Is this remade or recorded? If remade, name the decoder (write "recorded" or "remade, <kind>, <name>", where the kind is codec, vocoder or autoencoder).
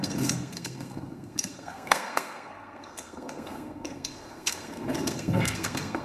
remade, codec, SNAC